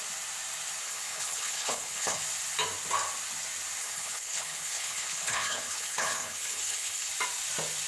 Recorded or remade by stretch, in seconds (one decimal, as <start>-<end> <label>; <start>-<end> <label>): 0.0-0.8 recorded; 0.8-2.2 remade; 2.2-3.8 recorded; 3.8-7.1 remade; 7.1-7.9 recorded